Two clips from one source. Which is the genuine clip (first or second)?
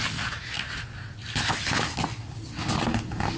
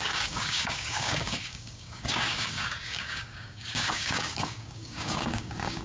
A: first